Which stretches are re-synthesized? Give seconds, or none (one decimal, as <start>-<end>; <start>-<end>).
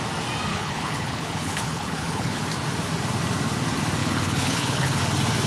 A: 0.5-2.4; 4.0-5.0